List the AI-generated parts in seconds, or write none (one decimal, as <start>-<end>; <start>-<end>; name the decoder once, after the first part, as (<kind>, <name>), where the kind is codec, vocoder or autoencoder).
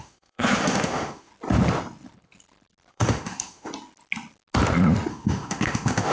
0.0-1.3 (autoencoder, DAC-VAE); 2.9-3.7; 5.1-6.1